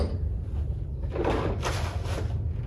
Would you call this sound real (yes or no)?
yes